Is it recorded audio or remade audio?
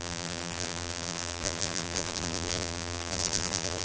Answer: remade